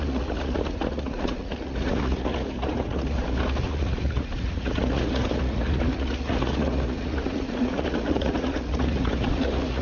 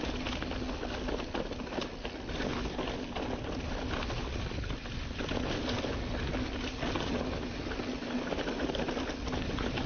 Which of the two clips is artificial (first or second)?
first